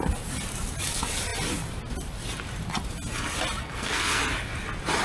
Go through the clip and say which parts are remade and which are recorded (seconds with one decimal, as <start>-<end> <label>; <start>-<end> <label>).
0.0-3.6 recorded; 3.6-4.2 remade; 4.2-5.0 recorded

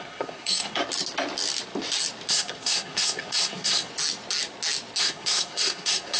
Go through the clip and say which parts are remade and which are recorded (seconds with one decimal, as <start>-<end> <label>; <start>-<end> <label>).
0.0-0.8 remade; 0.8-2.3 recorded; 2.3-3.9 remade; 3.9-5.0 recorded; 5.0-6.2 remade

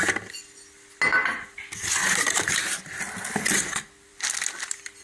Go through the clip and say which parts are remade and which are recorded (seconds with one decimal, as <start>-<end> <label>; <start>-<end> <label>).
0.0-5.0 recorded

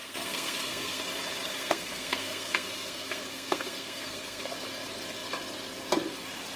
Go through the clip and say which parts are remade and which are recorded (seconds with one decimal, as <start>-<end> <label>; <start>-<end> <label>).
0.0-1.0 remade; 1.0-1.5 recorded; 1.5-4.5 remade; 4.5-6.6 recorded

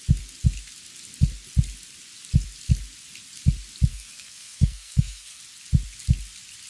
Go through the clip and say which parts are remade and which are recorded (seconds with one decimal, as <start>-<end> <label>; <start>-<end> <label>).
0.0-3.9 recorded; 3.9-5.4 remade; 5.4-6.7 recorded

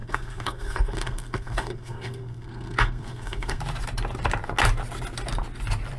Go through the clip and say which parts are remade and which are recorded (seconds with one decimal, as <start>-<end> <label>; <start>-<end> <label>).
0.0-3.6 remade; 3.6-6.0 recorded

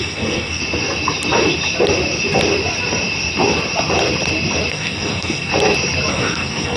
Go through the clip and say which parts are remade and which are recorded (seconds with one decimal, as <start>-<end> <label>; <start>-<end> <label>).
0.0-0.6 remade; 0.6-4.7 recorded; 4.7-5.5 remade; 5.5-6.1 recorded; 6.1-6.8 remade